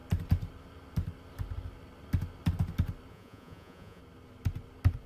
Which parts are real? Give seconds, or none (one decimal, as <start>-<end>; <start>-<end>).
0.0-3.1; 4.0-5.1